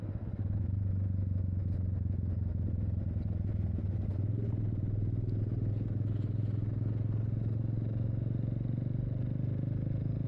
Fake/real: real